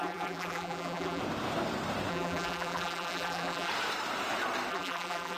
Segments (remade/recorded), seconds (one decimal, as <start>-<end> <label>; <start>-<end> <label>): 0.0-1.2 remade; 1.2-2.1 recorded; 2.1-3.7 remade; 3.7-4.7 recorded; 4.7-5.4 remade